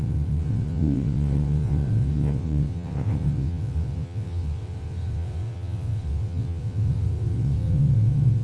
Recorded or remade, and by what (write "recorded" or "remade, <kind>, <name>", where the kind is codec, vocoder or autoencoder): remade, vocoder, WaveNeXt